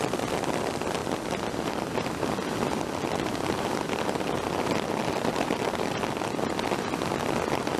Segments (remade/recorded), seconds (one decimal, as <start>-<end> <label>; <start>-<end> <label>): 0.0-1.0 remade; 1.0-1.6 recorded; 1.6-7.8 remade